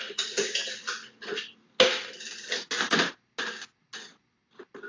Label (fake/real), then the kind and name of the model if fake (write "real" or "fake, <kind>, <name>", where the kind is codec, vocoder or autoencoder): real